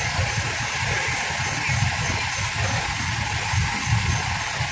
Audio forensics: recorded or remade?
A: recorded